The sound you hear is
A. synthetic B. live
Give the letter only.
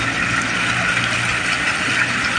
B